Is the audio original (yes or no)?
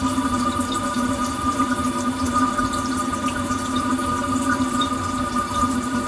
no